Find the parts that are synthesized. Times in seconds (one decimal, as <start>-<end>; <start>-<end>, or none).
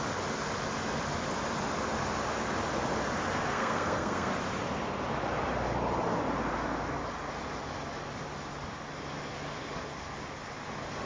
3.5-4.3